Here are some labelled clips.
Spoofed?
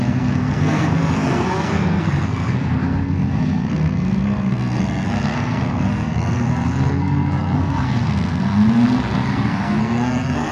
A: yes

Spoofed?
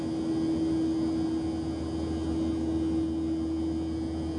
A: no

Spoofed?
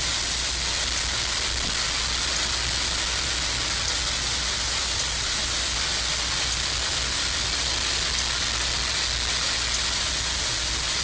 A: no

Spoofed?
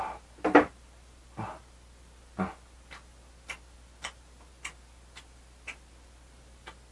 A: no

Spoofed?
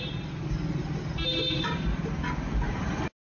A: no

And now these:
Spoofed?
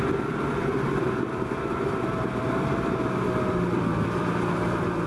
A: yes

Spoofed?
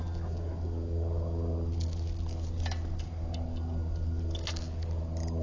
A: no